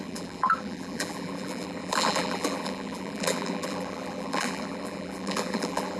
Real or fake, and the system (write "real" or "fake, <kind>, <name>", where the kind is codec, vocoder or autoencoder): fake, vocoder, BigVGAN v2